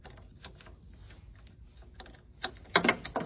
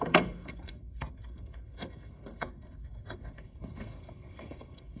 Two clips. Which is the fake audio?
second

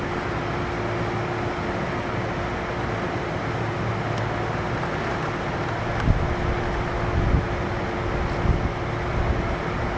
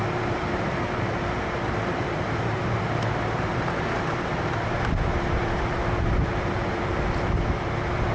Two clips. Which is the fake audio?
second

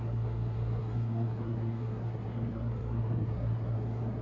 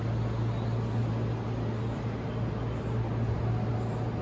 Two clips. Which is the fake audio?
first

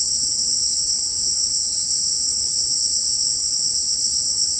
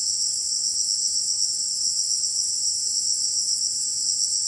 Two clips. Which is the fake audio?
first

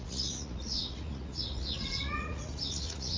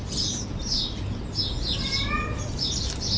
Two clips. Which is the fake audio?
first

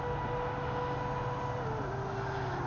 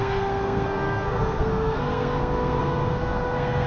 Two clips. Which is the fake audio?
second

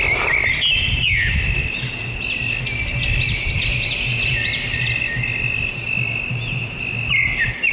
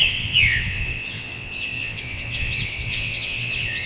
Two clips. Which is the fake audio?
second